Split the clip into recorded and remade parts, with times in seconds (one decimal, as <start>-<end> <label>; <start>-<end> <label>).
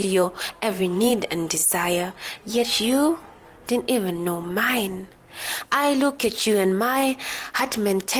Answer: 0.0-1.1 remade; 1.1-8.2 recorded